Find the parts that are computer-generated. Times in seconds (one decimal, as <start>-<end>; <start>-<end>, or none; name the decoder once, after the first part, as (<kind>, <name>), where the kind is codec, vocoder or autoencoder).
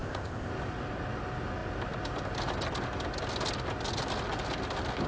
0.0-0.5 (codec, ZipCodec)